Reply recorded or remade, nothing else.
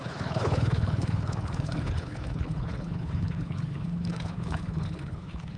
remade